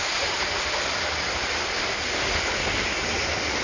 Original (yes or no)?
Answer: yes